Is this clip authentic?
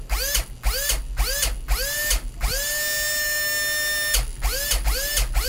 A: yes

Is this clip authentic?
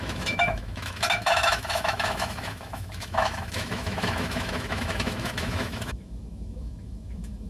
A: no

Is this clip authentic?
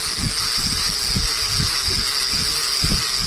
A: yes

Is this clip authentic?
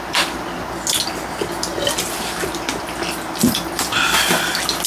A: yes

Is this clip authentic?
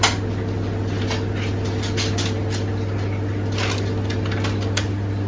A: yes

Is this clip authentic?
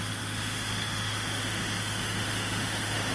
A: no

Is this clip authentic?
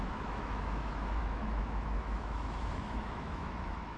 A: no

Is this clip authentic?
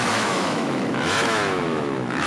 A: no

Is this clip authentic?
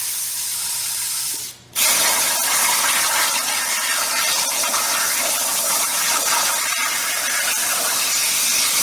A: yes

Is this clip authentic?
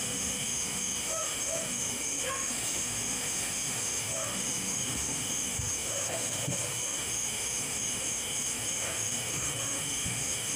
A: no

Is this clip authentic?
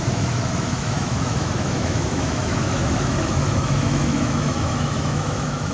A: no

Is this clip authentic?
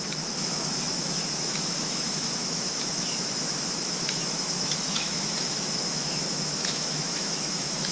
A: no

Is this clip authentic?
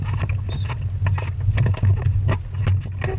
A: yes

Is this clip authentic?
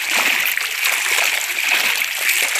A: yes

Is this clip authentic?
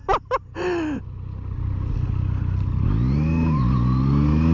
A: yes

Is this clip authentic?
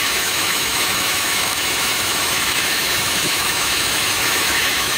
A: no